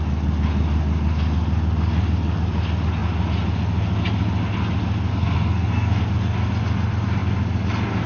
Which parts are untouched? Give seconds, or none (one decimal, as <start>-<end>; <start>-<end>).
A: 0.0-5.1; 6.0-8.1